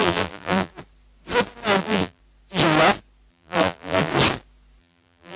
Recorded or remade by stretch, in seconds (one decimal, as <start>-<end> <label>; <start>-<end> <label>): 0.0-0.7 remade; 0.7-1.8 recorded; 1.8-2.2 remade; 2.2-3.3 recorded; 3.3-4.1 remade; 4.1-4.8 recorded; 4.8-5.4 remade